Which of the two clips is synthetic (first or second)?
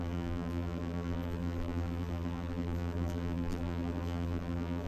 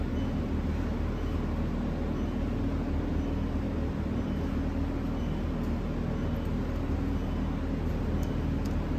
first